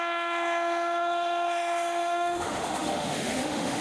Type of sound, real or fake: fake